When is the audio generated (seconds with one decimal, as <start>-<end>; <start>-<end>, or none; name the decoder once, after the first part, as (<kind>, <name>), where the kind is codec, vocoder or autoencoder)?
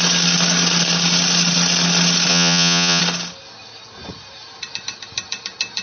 2.3-3.0 (vocoder, Vocos)